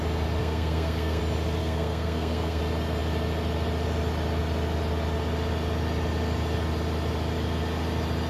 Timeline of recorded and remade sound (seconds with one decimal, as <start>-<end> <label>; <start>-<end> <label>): 0.0-0.4 recorded; 0.4-1.2 remade; 1.2-1.6 recorded; 1.6-2.6 remade; 2.6-8.3 recorded